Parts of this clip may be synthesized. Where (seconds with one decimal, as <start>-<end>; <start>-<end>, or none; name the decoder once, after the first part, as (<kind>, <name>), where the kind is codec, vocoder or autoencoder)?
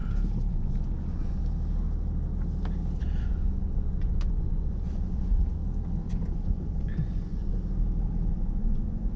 0.5-1.4 (vocoder, Vocos); 3.0-5.6; 6.1-7.5; 8.3-9.2